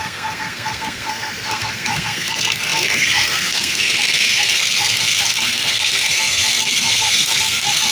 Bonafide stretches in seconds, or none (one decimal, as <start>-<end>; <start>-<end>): none